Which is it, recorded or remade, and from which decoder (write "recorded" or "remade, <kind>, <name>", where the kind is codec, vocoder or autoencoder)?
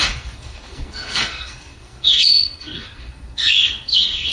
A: remade, codec, SNAC